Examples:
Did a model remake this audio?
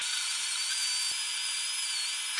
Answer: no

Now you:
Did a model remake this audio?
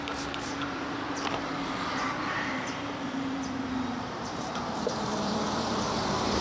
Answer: yes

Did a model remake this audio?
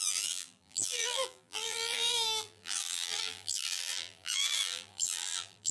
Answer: yes